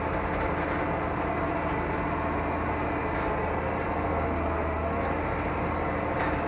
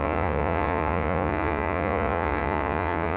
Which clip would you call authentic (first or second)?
first